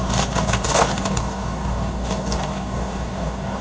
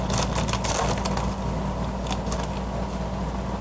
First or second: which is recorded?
second